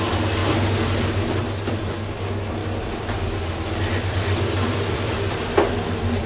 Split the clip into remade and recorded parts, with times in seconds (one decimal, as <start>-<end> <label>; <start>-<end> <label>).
0.0-6.3 remade